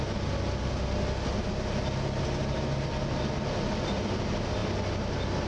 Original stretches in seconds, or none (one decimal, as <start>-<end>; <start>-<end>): 0.0-5.5